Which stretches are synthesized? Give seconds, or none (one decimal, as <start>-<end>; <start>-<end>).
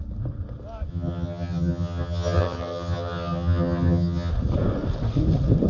0.9-4.3